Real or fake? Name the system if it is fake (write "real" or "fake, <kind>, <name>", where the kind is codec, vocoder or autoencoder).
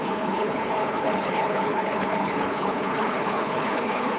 fake, codec, HILCodec